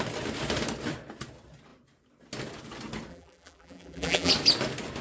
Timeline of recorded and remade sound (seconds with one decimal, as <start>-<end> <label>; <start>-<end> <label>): 0.0-3.1 recorded; 3.1-4.3 remade; 4.3-5.0 recorded